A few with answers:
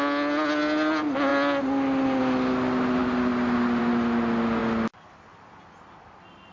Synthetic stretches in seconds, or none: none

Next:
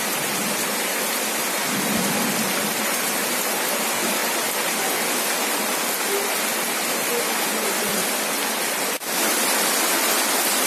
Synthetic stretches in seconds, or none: none

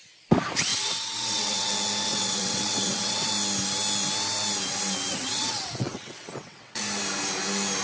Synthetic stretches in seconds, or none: 0.7-1.7 (vocoder, WaveNeXt); 2.1-3.3; 5.1-6.8

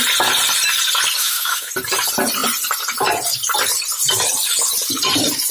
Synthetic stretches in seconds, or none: 1.2-1.7 (autoencoder, DAC-VAE)